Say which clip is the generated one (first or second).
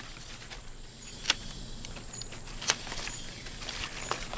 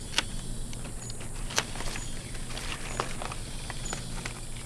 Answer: first